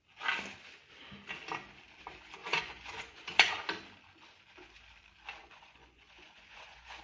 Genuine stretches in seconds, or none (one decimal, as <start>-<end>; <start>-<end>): 0.0-2.4; 3.6-5.4

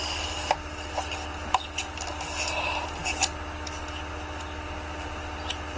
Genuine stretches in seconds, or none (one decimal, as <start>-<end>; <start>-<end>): 0.0-5.8

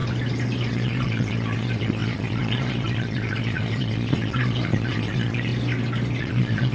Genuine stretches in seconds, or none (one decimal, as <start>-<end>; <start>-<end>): 0.0-0.7; 5.5-6.2

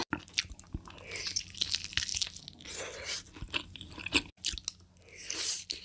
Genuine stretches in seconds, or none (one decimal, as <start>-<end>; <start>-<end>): 0.0-5.8

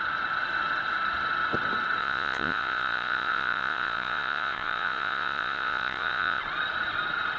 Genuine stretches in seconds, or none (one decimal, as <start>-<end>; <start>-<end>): 0.0-2.0; 6.4-7.4

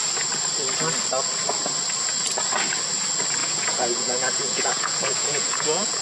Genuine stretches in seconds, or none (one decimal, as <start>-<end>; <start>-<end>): 0.0-3.4